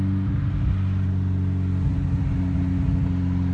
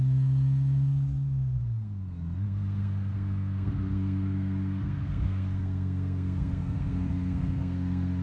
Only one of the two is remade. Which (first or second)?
second